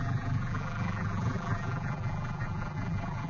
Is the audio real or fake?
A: fake